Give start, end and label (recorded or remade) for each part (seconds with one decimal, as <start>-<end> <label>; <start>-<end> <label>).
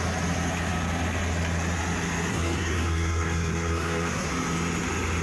0.0-2.3 recorded; 2.3-4.3 remade; 4.3-5.2 recorded